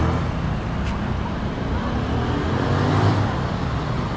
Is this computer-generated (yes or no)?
no